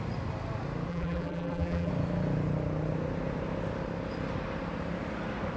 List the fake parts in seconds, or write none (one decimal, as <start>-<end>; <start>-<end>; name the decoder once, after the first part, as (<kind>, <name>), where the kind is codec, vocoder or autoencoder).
0.9-1.9 (vocoder, BigVGAN v2)

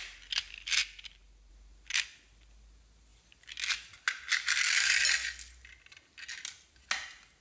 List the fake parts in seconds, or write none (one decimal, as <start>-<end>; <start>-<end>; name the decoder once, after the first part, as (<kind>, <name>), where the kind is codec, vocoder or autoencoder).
none

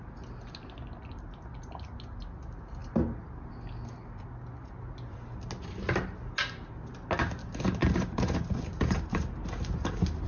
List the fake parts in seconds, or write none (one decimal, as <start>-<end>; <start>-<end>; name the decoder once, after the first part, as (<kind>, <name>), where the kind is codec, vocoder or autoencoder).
7.8-9.2 (vocoder, BigVGAN v2)